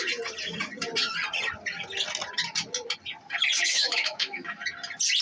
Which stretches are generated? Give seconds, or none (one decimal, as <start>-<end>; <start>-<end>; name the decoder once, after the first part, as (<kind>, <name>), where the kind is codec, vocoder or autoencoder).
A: 3.7-4.6 (autoencoder, DAC-VAE)